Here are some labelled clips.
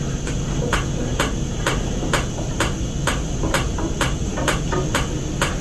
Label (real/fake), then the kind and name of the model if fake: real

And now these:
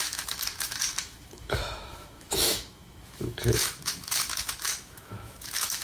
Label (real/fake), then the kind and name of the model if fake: fake, autoencoder, DAC-VAE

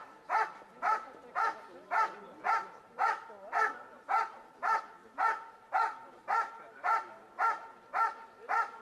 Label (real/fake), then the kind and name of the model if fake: real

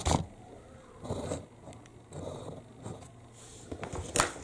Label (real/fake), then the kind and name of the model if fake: real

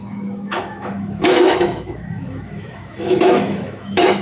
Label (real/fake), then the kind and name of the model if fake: fake, autoencoder, DAC-VAE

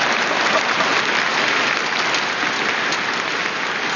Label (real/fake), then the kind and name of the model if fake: real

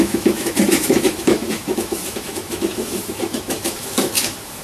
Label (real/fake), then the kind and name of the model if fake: fake, autoencoder, DAC-VAE